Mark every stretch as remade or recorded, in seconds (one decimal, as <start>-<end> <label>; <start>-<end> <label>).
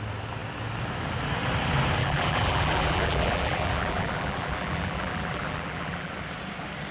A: 0.0-2.0 recorded; 2.0-6.1 remade; 6.1-6.9 recorded